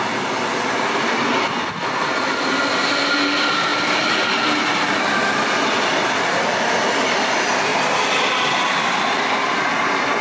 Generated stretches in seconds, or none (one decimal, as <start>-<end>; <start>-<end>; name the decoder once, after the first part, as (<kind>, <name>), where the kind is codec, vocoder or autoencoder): none